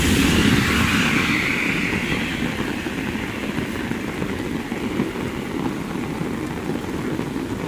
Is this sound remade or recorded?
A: recorded